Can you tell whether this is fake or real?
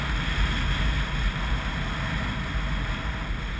real